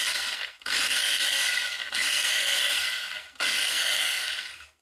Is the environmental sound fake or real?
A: fake